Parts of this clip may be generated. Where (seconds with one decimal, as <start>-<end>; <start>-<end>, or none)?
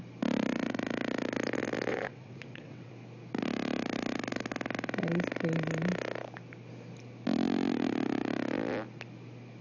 1.9-2.9